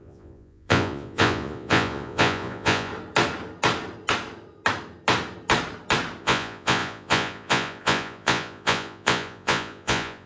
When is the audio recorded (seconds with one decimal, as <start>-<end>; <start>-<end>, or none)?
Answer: 2.9-6.2